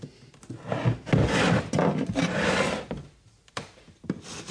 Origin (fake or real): real